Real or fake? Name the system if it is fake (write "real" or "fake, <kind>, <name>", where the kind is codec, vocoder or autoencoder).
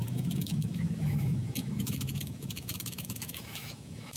fake, autoencoder, DAC-VAE